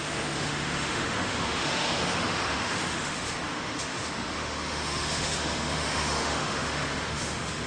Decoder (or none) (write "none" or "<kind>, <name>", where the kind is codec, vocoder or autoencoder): autoencoder, DAC-VAE